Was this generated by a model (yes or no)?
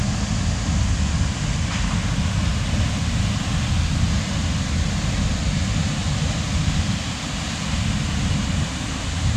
no